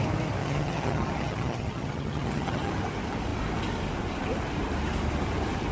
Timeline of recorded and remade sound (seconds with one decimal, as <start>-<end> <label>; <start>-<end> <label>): 0.0-0.4 recorded; 0.4-2.7 remade; 2.7-5.7 recorded